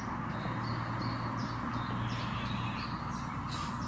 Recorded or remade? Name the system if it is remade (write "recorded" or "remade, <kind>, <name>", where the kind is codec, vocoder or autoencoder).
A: recorded